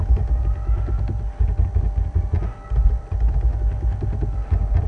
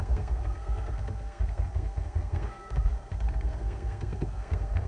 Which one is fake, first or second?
second